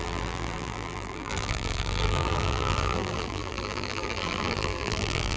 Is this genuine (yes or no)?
no